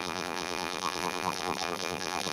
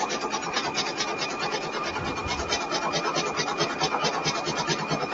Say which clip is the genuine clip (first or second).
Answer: second